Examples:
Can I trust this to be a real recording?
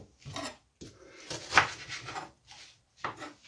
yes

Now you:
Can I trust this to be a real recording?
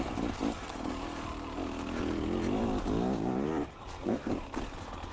yes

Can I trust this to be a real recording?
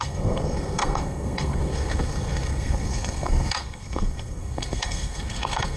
no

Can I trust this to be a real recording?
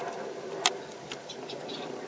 yes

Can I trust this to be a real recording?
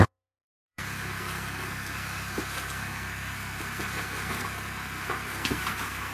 no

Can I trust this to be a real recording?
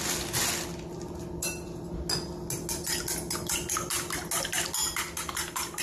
yes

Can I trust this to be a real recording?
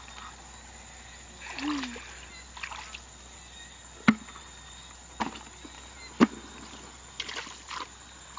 yes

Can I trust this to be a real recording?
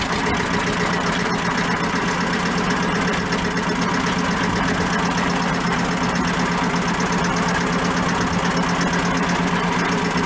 yes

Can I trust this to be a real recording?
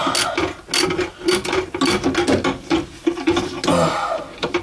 yes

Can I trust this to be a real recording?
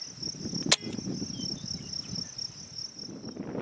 yes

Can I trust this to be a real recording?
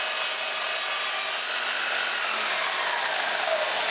yes